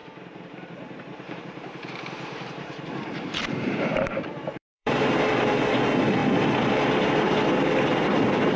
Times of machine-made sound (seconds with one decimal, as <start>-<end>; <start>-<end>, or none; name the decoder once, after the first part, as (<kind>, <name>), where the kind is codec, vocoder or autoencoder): 0.0-5.1 (vocoder, BigVGAN v2)